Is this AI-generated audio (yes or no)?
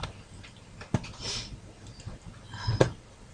no